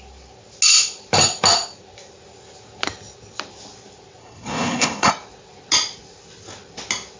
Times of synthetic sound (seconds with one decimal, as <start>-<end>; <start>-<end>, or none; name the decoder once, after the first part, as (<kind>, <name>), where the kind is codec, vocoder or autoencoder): 4.2-5.1 (codec, HILCodec)

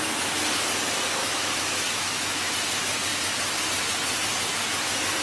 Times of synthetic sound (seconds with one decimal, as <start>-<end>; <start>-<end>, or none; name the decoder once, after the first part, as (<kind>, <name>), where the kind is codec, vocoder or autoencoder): 1.2-2.5 (autoencoder, DAC-VAE)

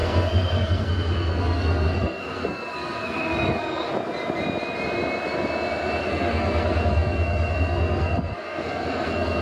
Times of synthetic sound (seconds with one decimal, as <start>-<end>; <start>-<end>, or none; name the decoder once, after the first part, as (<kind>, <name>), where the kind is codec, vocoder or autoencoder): 0.0-3.9 (codec, SNAC); 6.0-9.4